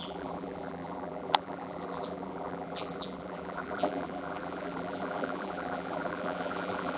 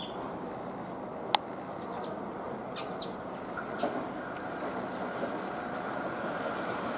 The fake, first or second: first